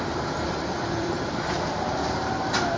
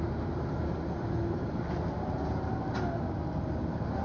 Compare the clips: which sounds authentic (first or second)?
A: second